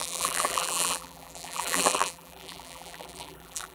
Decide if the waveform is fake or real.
fake